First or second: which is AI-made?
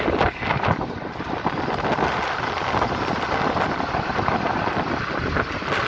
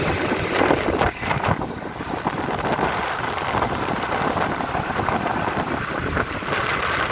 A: second